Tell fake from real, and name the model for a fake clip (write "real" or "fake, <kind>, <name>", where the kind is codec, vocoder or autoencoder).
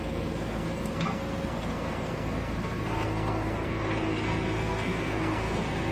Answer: fake, codec, SNAC